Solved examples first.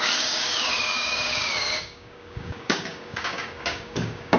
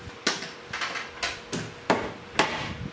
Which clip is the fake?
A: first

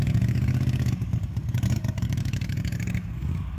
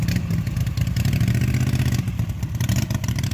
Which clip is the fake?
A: first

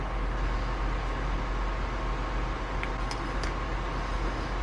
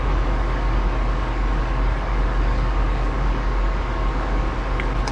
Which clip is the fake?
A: second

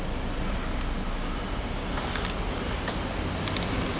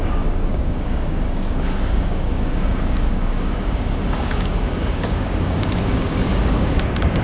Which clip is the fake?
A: second